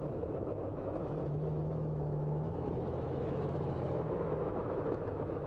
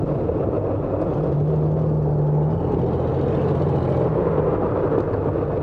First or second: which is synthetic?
first